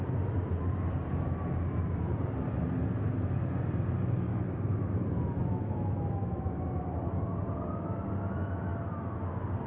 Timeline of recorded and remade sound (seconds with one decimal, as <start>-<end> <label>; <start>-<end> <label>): 0.0-4.3 recorded; 4.3-6.4 remade; 6.4-8.7 recorded; 8.7-9.2 remade; 9.2-9.7 recorded